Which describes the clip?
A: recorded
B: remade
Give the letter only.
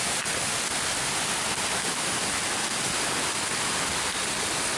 A